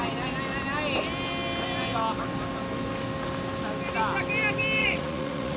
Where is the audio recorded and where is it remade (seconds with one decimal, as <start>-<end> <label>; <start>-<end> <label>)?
0.0-4.8 recorded; 4.8-5.6 remade

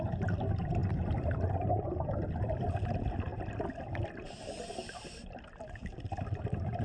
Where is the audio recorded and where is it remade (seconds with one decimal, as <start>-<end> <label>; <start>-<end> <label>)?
0.0-6.8 recorded

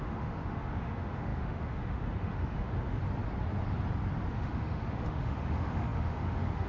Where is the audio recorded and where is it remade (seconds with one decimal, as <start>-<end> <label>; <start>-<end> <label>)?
0.0-3.0 remade; 3.0-4.3 recorded; 4.3-6.7 remade

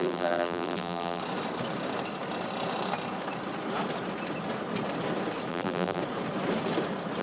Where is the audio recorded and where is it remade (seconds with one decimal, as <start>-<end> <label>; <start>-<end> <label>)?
0.0-1.2 remade; 1.2-5.5 recorded; 5.5-6.0 remade; 6.0-7.2 recorded

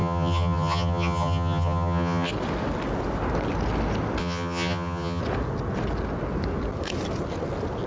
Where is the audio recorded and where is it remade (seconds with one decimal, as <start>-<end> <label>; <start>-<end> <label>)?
0.0-2.3 remade; 2.3-4.2 recorded; 4.2-5.2 remade; 5.2-7.9 recorded

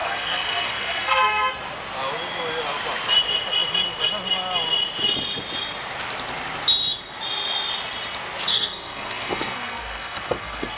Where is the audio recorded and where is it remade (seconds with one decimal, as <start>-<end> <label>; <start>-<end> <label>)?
0.0-1.5 remade; 1.5-8.5 recorded; 8.5-10.8 remade

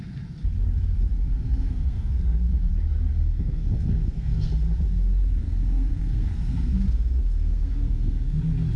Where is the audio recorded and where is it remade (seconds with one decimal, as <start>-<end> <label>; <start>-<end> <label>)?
0.0-1.2 recorded; 1.2-2.7 remade; 2.7-3.1 recorded; 3.1-4.5 remade; 4.5-5.4 recorded; 5.4-8.4 remade; 8.4-8.8 recorded